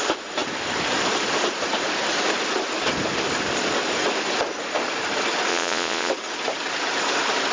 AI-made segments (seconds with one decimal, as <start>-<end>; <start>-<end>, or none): 5.5-6.1